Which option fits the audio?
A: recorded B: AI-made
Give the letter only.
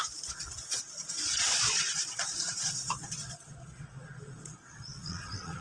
B